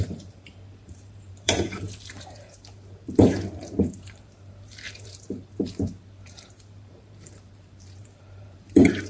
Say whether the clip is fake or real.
fake